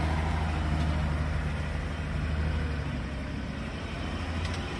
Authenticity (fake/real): real